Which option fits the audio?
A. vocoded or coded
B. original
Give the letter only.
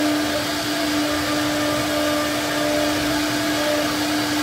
B